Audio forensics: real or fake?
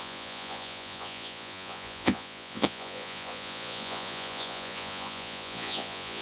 fake